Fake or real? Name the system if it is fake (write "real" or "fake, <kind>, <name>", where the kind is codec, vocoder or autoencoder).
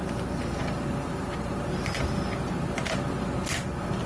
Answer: real